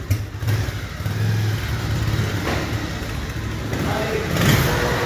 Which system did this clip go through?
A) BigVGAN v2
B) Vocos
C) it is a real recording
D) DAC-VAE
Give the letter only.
C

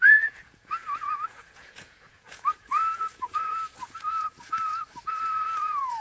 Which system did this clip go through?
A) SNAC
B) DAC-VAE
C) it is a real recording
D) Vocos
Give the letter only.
D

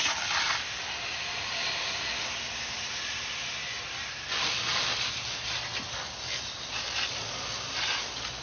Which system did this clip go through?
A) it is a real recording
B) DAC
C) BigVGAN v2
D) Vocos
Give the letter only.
A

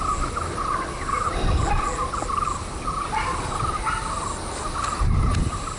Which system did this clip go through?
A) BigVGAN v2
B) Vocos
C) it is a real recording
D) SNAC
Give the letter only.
C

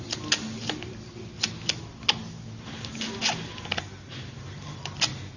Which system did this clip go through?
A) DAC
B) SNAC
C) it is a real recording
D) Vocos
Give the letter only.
C